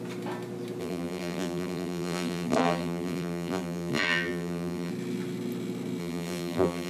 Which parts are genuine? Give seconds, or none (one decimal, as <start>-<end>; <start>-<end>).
0.0-0.8; 4.9-6.0

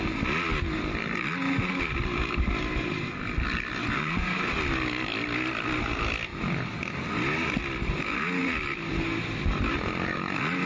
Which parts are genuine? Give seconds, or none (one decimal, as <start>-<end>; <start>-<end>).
0.0-8.4; 8.9-10.7

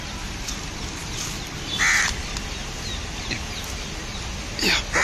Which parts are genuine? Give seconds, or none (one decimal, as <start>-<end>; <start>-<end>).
0.0-5.0

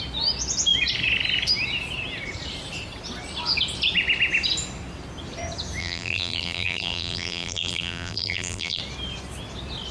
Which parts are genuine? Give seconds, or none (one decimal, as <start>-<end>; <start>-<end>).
0.0-5.8; 8.8-9.9

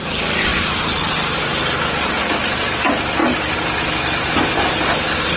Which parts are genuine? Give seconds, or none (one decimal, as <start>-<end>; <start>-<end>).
0.0-5.4